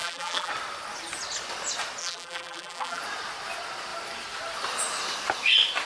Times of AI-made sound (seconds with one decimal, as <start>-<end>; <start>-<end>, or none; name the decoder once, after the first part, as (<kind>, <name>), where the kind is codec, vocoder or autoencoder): 0.0-0.5 (vocoder, BigVGAN v2); 2.0-3.0